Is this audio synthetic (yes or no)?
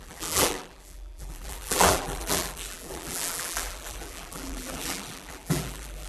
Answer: yes